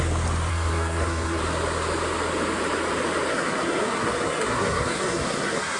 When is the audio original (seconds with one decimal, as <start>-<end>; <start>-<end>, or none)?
0.0-0.5; 1.4-3.3